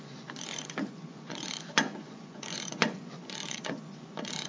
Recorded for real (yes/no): no